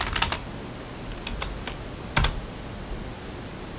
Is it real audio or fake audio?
real